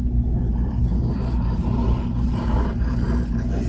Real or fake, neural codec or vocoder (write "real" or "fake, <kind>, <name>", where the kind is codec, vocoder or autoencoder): fake, vocoder, BigVGAN v2